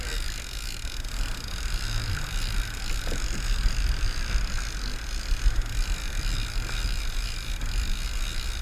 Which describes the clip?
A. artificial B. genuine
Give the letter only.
B